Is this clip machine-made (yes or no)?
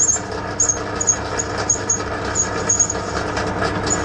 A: no